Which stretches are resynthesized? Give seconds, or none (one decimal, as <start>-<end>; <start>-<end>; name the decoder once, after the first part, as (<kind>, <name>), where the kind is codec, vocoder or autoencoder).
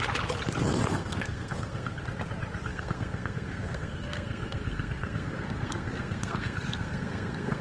0.9-2.0 (codec, SNAC); 2.7-7.6